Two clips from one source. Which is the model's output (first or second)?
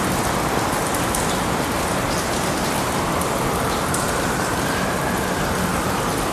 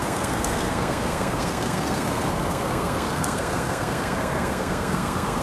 second